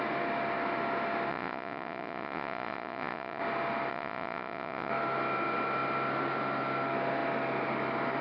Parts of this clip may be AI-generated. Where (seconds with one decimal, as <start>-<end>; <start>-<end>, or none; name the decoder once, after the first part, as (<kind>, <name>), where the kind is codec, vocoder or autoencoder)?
1.3-3.4 (vocoder, Vocos); 3.9-4.9